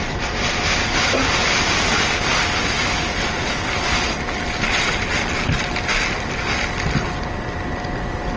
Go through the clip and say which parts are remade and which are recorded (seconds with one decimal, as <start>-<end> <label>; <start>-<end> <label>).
0.0-8.4 recorded